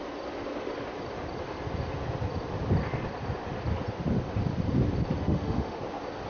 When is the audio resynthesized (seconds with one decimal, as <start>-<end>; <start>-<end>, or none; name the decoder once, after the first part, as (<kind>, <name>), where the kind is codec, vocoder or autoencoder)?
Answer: 5.2-5.8 (autoencoder, DAC-VAE)